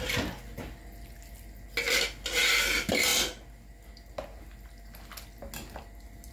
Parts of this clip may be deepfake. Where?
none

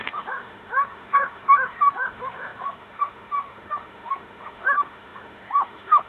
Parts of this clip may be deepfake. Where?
0.0-6.1 (autoencoder, DAC-VAE)

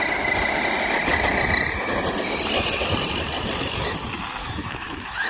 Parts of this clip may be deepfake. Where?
4.4-5.3 (autoencoder, DAC-VAE)